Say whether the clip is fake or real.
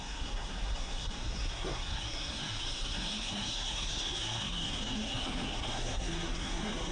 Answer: fake